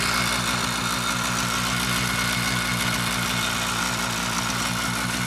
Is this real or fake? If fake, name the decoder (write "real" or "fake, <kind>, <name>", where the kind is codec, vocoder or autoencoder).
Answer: real